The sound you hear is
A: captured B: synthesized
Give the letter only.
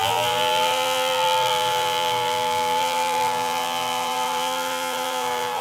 B